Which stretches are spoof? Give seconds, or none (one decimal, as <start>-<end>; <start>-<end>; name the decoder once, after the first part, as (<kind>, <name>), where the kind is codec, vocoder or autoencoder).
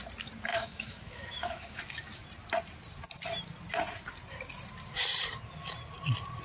0.5-1.8 (autoencoder, DAC-VAE)